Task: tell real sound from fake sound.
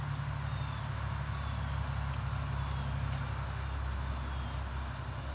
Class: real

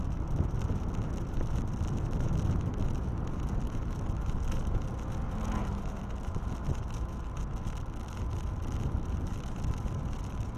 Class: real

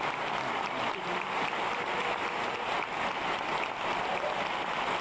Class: real